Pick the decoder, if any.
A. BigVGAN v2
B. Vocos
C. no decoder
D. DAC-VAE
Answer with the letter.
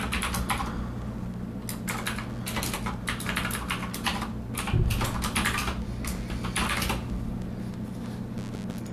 C